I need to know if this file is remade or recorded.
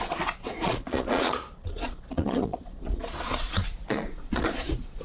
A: remade